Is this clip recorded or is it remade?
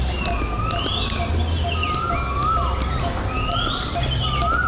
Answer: recorded